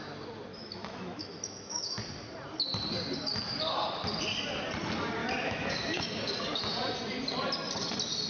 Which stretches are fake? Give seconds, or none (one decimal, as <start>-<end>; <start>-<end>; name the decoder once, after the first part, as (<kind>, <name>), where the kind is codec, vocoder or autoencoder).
0.5-2.0 (autoencoder, DAC-VAE); 5.2-6.2